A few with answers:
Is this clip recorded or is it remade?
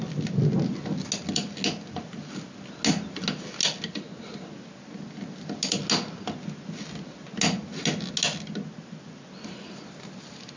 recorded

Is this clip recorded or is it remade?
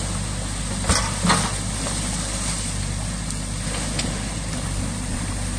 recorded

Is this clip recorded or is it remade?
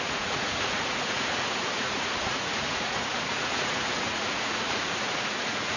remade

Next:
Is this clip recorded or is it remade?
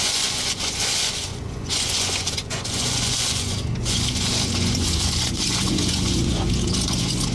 remade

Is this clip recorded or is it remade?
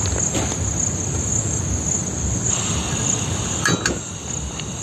recorded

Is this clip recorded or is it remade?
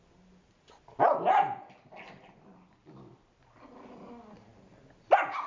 recorded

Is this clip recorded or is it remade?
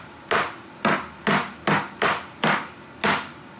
recorded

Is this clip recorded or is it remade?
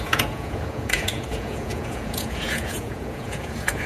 remade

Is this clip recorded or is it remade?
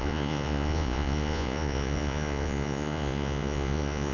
remade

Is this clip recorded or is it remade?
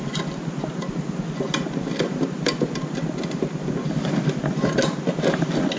recorded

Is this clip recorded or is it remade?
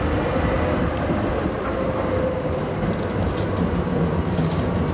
recorded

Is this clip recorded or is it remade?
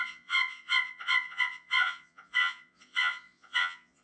remade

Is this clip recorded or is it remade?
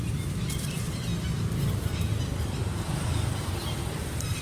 recorded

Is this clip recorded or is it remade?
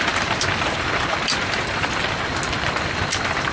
recorded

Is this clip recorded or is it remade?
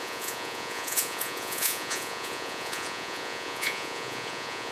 remade